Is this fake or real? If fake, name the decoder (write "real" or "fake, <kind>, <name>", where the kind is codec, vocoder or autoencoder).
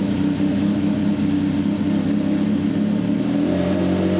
real